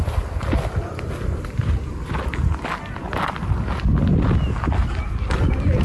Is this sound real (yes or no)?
yes